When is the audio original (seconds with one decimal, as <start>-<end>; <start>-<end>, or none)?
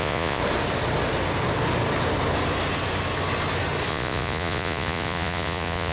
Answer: 0.4-3.9